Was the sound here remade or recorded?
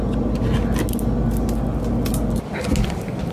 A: recorded